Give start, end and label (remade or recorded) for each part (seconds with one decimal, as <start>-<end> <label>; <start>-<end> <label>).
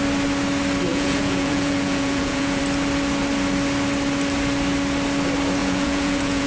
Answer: 0.0-0.9 recorded; 0.9-2.6 remade; 2.6-5.6 recorded; 5.6-6.5 remade